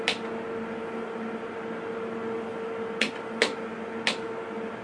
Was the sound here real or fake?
real